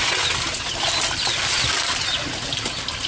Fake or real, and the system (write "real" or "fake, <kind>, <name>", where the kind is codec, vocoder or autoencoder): real